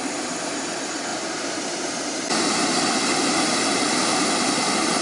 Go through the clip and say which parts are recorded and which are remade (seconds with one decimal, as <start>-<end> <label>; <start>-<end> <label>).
0.0-5.0 remade